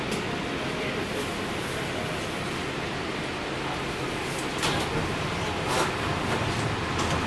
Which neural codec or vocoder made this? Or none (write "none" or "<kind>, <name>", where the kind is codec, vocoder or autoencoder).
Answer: none